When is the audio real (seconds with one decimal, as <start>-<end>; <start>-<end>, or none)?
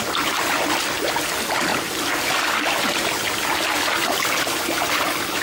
0.0-5.4